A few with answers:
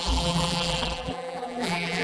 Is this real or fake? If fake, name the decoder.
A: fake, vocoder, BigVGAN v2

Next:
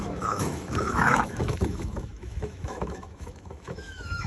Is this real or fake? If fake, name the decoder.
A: fake, autoencoder, DAC-VAE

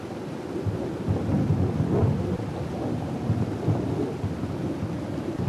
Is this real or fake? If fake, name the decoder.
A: real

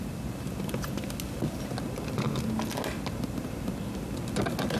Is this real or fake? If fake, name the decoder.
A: real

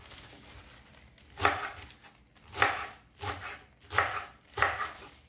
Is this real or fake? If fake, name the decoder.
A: real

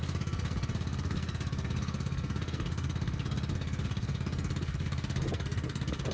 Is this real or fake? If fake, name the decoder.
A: fake, codec, SNAC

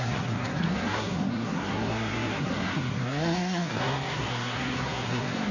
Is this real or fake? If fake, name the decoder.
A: fake, codec, SNAC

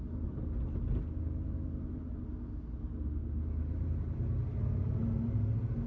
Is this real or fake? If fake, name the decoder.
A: real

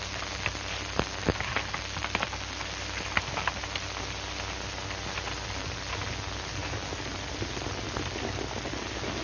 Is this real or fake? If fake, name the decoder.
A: real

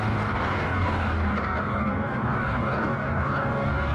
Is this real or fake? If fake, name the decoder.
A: fake, codec, DAC